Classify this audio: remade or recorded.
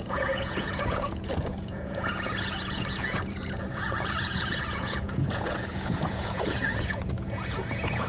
remade